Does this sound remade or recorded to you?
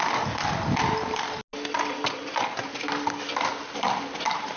recorded